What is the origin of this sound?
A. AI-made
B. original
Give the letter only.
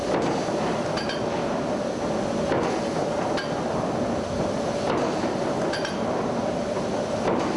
B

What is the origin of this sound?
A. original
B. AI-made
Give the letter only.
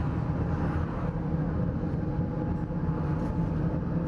A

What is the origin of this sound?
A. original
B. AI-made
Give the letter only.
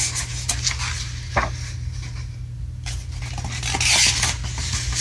A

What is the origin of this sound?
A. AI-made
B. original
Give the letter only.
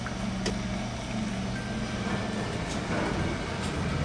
B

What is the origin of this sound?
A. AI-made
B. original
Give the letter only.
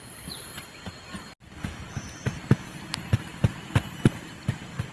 B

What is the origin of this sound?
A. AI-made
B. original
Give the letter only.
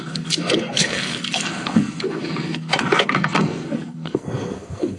A